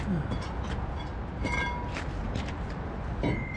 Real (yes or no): yes